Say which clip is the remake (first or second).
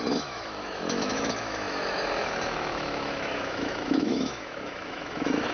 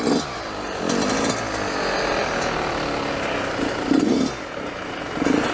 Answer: first